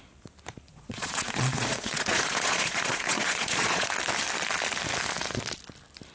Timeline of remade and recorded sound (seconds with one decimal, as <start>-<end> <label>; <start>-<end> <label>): 0.0-0.7 recorded; 0.7-3.9 remade; 3.9-6.1 recorded